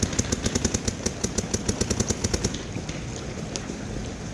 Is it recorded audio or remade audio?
recorded